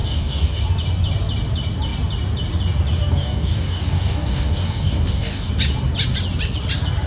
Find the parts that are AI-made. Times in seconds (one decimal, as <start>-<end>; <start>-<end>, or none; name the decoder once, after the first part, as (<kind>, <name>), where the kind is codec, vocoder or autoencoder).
0.0-0.6 (codec, DAC); 3.0-5.5